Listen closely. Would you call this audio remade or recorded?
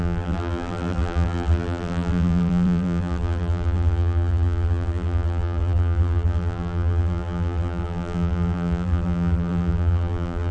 remade